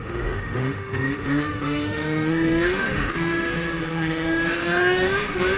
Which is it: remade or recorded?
remade